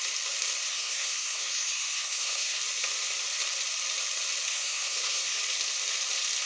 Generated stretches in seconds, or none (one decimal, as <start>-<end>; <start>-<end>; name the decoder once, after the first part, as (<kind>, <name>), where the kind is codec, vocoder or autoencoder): 0.7-2.6 (codec, SNAC); 4.5-5.4